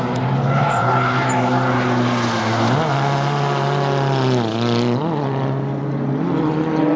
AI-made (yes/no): no